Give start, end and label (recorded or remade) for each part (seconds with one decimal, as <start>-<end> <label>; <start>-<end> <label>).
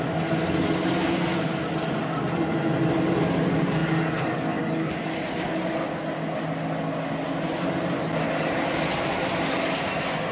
0.0-10.3 recorded